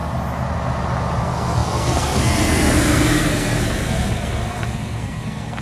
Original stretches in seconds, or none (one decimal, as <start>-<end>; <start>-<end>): 0.0-1.2